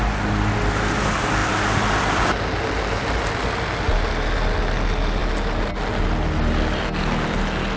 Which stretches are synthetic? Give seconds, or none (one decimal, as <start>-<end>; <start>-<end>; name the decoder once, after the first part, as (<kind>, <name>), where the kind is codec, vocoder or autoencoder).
none